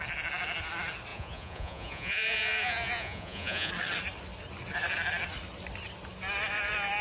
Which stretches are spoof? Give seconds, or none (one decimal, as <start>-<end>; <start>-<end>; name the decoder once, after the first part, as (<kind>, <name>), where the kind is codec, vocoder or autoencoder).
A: 1.1-3.7 (vocoder, Vocos)